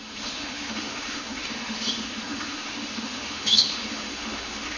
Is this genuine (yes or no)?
no